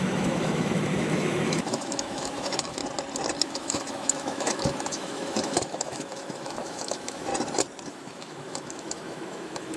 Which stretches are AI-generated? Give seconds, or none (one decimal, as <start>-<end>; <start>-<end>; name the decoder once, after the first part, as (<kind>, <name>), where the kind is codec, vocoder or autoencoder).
0.0-2.8 (autoencoder, DAC-VAE); 3.4-7.3; 7.9-9.8